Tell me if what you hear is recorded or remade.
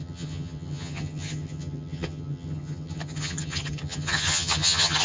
remade